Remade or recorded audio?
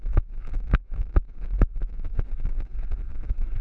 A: remade